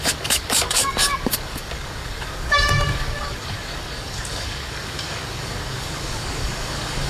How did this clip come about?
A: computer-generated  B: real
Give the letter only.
A